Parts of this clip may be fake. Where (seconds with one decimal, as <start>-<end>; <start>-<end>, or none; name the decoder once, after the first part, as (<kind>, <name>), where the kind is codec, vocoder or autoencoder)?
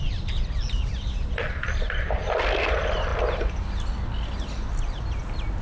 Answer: none